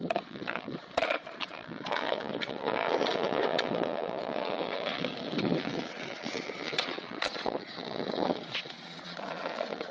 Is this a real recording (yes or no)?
no